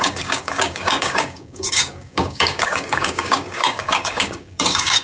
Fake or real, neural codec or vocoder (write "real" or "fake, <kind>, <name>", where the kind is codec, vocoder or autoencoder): fake, codec, DAC